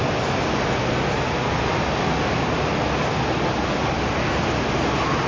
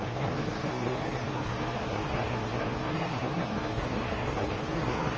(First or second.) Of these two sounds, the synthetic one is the second